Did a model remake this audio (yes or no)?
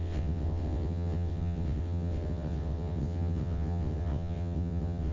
yes